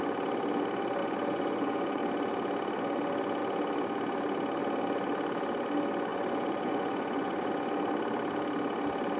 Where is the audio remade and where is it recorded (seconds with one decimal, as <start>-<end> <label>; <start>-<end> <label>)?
0.0-1.0 recorded; 1.0-2.0 remade; 2.0-6.1 recorded; 6.1-7.5 remade; 7.5-9.2 recorded